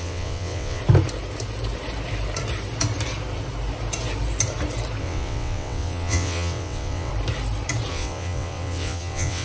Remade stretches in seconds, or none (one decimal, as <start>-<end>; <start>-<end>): 0.0-0.8; 5.0-7.1; 7.9-9.4